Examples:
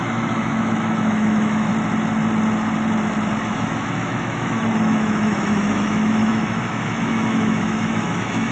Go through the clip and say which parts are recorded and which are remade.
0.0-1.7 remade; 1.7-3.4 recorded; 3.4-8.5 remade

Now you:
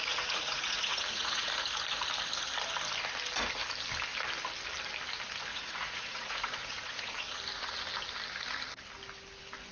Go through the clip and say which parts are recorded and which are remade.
0.0-1.5 remade; 1.5-5.5 recorded; 5.5-7.2 remade; 7.2-9.7 recorded

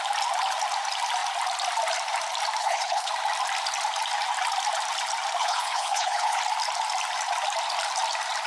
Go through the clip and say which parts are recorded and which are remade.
0.0-2.6 recorded; 2.6-3.1 remade; 3.1-5.4 recorded; 5.4-6.4 remade; 6.4-8.5 recorded

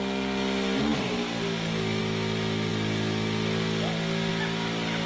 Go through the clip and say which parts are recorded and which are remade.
0.0-5.1 recorded

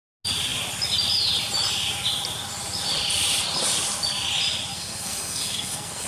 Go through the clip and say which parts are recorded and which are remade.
0.0-4.7 recorded; 4.7-6.1 remade

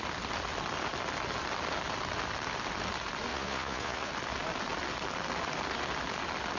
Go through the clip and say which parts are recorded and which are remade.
0.0-3.3 recorded; 3.3-4.1 remade; 4.1-6.6 recorded

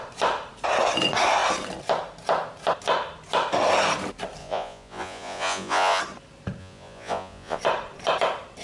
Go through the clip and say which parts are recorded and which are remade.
0.0-4.4 recorded; 4.4-6.0 remade; 6.0-6.6 recorded; 6.6-7.6 remade; 7.6-8.6 recorded

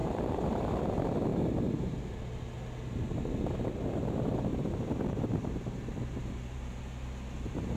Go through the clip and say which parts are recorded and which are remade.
0.0-0.9 remade; 0.9-4.5 recorded; 4.5-6.8 remade; 6.8-7.8 recorded